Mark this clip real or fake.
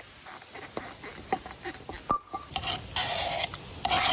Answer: real